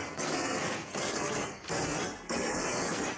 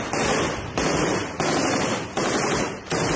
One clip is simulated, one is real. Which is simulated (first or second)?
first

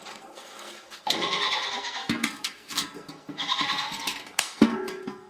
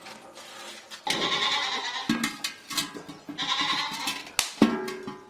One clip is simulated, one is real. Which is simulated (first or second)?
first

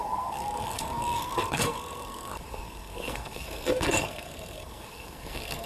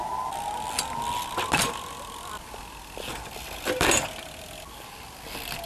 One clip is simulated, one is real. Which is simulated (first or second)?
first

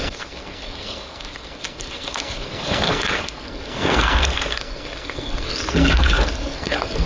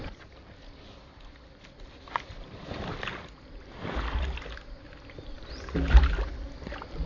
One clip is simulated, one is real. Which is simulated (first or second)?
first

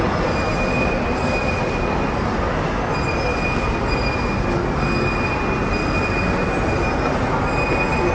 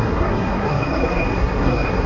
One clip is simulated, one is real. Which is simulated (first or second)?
second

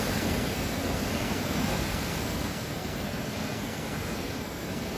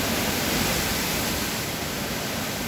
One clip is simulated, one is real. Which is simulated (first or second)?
first